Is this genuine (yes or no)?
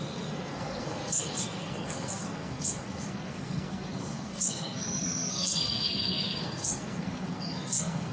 no